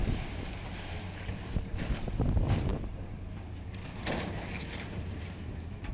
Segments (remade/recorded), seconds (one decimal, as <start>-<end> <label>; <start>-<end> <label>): 0.0-1.8 remade; 1.8-2.7 recorded; 2.7-5.9 remade